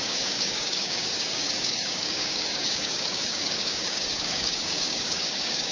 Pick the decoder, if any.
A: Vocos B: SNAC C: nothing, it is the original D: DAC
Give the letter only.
D